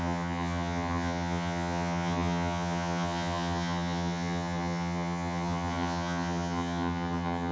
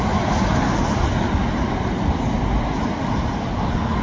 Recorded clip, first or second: second